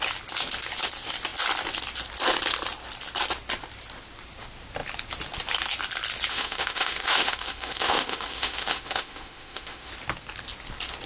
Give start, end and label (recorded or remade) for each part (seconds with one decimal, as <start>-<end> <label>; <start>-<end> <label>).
0.0-6.3 recorded; 6.3-9.9 remade; 9.9-11.1 recorded